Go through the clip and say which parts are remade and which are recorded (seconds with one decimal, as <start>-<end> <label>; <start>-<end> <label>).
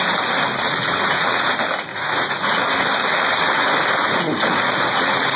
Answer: 0.0-0.5 recorded; 0.5-1.5 remade; 1.5-1.9 recorded; 1.9-2.6 remade; 2.6-4.5 recorded; 4.5-5.4 remade